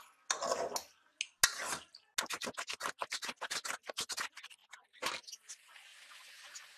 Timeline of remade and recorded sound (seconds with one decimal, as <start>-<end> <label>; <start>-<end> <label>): 0.0-6.8 recorded